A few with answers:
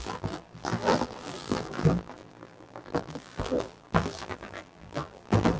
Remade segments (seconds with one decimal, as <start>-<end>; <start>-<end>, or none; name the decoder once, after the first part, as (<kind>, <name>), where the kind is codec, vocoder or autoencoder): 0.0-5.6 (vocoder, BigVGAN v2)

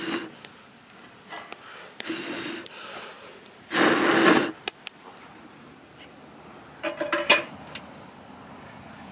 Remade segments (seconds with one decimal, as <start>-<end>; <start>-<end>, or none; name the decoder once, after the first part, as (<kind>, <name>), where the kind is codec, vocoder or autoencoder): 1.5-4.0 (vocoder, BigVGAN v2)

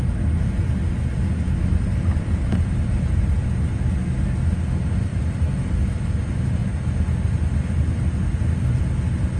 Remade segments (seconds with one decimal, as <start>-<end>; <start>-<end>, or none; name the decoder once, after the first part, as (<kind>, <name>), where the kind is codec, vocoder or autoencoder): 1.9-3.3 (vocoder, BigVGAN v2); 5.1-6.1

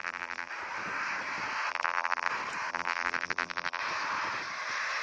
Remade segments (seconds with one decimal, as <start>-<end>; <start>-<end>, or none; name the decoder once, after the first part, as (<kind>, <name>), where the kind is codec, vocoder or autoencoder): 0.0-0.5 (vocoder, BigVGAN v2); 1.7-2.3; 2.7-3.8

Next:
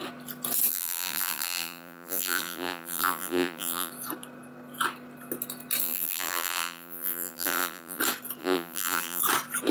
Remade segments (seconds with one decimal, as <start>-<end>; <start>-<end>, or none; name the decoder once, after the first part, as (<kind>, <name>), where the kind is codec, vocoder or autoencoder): 0.7-3.9 (vocoder, BigVGAN v2); 5.8-8.0; 8.4-9.2